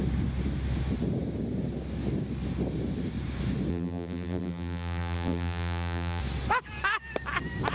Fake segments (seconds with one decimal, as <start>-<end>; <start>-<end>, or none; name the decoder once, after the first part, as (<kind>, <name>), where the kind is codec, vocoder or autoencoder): 3.7-6.2 (vocoder, BigVGAN v2)